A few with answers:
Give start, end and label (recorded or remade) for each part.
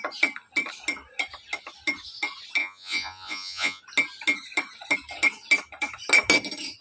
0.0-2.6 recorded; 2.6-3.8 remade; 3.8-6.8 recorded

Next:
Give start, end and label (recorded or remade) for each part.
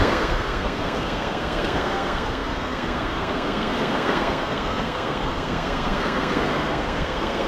0.0-7.5 remade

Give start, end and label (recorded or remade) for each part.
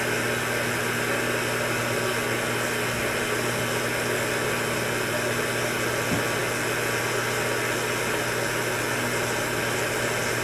0.0-10.4 recorded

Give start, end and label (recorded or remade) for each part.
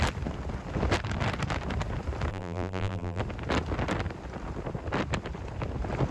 0.0-2.3 recorded; 2.3-3.2 remade; 3.2-6.1 recorded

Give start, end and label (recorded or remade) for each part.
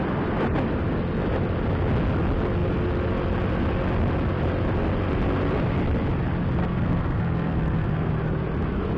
0.0-6.6 recorded; 6.6-8.1 remade; 8.1-9.0 recorded